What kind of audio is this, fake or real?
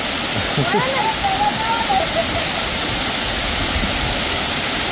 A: real